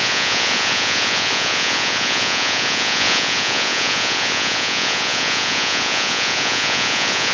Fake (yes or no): yes